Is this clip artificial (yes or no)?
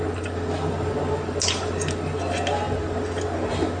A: no